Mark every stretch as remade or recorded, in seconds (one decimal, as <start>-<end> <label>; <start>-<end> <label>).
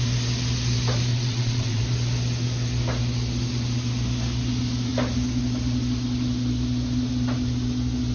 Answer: 0.0-1.1 recorded; 1.1-1.8 remade; 1.8-8.1 recorded